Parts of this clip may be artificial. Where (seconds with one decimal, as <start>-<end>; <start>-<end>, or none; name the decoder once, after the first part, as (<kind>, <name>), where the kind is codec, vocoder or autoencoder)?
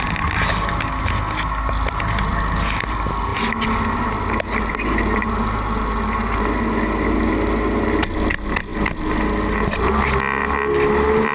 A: none